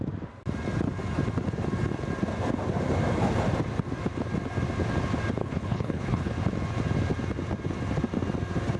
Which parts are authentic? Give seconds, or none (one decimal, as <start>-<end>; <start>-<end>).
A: 0.0-5.4; 6.3-8.8